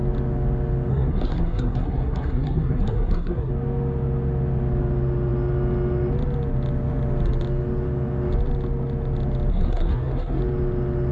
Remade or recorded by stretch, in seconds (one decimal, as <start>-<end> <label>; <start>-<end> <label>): 0.0-0.9 recorded; 0.9-3.5 remade; 3.5-9.5 recorded; 9.5-10.4 remade; 10.4-11.1 recorded